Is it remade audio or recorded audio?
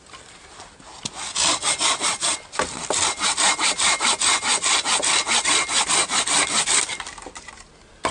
recorded